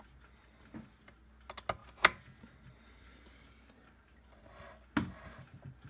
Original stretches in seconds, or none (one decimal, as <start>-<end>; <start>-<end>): 0.0-5.9